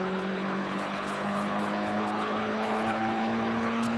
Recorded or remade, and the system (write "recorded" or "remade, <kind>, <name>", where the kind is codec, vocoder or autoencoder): remade, codec, HILCodec